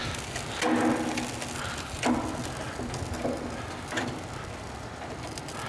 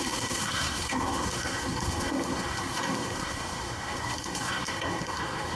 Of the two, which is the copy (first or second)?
second